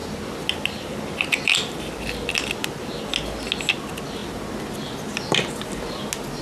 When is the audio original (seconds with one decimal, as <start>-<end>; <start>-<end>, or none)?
0.0-6.4